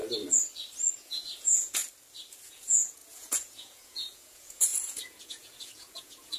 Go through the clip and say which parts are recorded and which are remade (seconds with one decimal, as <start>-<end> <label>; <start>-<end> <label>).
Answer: 0.0-0.9 recorded; 0.9-1.8 remade; 1.8-2.5 recorded; 2.5-6.4 remade